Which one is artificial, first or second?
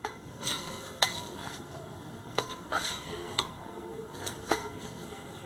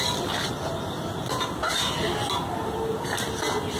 first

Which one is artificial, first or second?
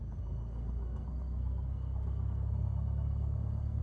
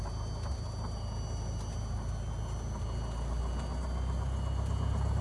first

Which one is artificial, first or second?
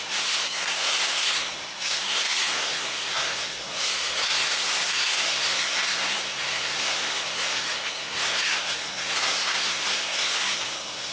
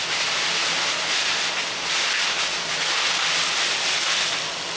first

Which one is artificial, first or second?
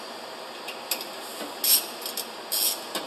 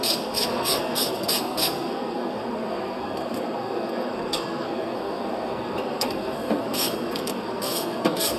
second